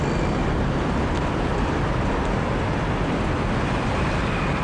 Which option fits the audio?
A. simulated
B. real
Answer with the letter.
A